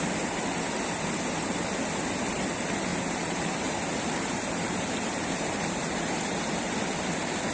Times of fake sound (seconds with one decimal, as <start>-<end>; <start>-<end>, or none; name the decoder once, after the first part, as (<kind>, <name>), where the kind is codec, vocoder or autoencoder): 2.9-6.6 (vocoder, BigVGAN v2)